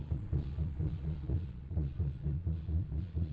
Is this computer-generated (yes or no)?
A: yes